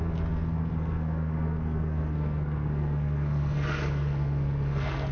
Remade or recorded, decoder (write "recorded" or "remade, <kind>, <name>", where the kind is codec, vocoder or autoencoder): remade, codec, SNAC